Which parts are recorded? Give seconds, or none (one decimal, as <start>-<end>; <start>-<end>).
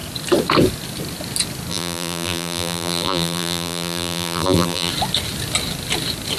0.0-1.7; 4.9-6.4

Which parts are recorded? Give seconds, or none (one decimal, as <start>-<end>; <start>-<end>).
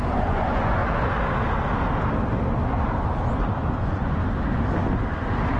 0.8-3.8; 4.2-5.6